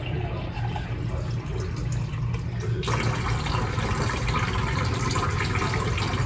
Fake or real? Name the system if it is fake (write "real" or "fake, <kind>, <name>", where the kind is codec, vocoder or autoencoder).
real